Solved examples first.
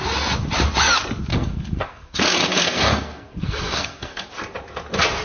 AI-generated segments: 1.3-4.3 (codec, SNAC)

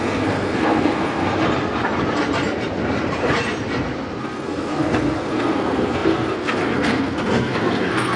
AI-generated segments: 0.0-1.3 (codec, SNAC); 4.2-8.2

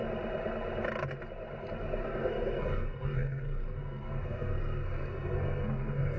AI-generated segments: 1.7-6.2 (codec, SNAC)

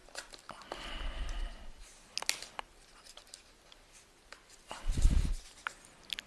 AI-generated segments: none

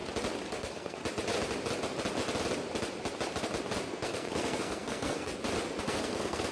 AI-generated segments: 0.5-1.0 (codec, SNAC); 3.9-5.3; 5.8-6.5